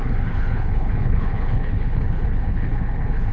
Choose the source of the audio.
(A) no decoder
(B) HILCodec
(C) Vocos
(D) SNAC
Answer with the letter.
B